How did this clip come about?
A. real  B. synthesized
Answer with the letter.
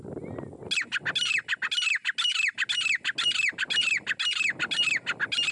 A